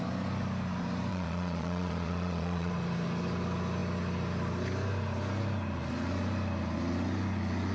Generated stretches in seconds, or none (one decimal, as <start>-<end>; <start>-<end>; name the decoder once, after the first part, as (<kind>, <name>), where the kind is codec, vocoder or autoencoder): 1.1-2.7 (vocoder, Vocos)